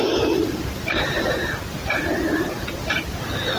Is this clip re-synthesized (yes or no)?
no